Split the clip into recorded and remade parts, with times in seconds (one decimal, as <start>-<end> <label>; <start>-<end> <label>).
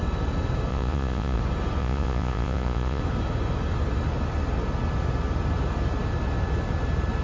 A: 0.0-0.7 recorded; 0.7-1.4 remade; 1.4-1.8 recorded; 1.8-3.0 remade; 3.0-7.2 recorded